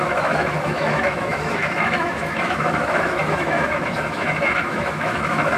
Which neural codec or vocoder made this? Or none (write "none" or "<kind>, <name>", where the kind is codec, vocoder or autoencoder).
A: autoencoder, DAC-VAE